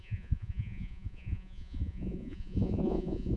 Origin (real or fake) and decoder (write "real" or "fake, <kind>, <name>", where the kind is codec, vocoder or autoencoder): fake, vocoder, Vocos